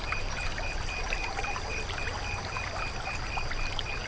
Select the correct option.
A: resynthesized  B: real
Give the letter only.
B